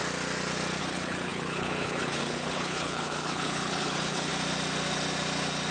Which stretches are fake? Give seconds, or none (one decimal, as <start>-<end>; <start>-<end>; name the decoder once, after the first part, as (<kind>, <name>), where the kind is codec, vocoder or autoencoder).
0.8-4.3 (codec, HILCodec)